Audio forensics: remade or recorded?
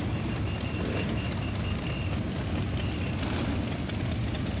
recorded